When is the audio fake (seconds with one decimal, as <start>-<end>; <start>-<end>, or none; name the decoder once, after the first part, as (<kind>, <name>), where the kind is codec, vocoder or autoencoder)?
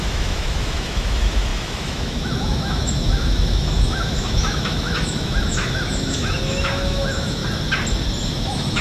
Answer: 0.0-7.4 (autoencoder, DAC-VAE); 8.3-8.8